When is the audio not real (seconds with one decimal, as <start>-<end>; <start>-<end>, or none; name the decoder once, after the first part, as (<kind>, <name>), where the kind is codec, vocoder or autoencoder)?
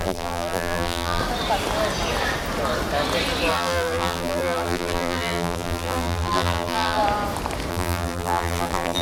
0.0-1.2 (vocoder, BigVGAN v2); 3.5-7.0; 7.7-9.0